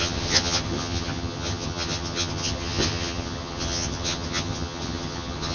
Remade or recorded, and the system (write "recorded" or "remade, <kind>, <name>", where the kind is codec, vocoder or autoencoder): remade, vocoder, HiFi-GAN